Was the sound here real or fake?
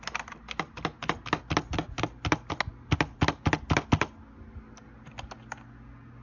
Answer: real